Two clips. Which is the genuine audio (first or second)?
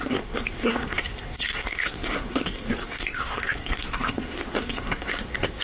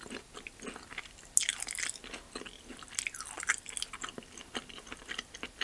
second